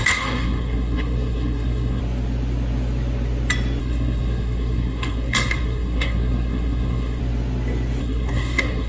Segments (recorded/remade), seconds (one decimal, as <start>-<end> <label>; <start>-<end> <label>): 0.0-2.0 remade; 2.0-3.8 recorded; 3.8-7.2 remade; 7.2-8.0 recorded; 8.0-8.9 remade